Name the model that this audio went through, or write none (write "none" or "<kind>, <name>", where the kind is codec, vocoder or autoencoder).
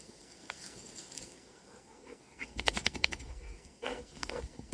codec, SNAC